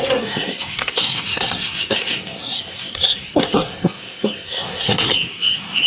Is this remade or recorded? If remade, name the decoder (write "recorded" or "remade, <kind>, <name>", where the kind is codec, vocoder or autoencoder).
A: remade, codec, SNAC